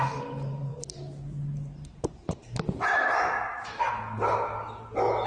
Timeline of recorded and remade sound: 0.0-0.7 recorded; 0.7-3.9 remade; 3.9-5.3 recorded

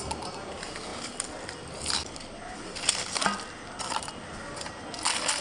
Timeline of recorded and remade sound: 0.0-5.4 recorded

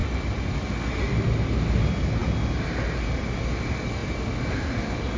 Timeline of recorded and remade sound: 0.0-5.2 recorded